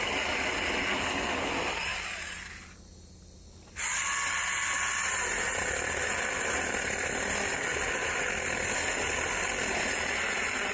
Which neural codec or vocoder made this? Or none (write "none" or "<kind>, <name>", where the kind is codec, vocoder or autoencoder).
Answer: none